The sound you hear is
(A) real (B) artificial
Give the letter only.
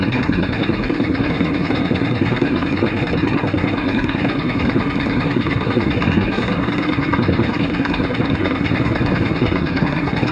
B